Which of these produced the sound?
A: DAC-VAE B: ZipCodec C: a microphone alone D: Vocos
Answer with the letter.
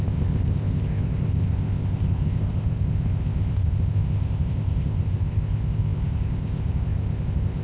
B